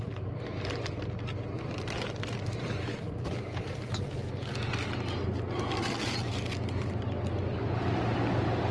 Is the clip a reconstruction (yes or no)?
no